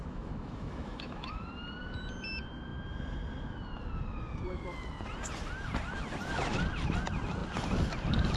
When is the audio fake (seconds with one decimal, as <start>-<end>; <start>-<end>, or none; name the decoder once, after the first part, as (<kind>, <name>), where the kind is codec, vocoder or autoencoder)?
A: 0.0-1.4 (autoencoder, DAC-VAE)